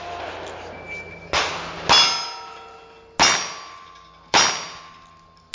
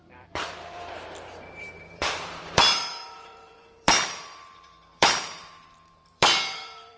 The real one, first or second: first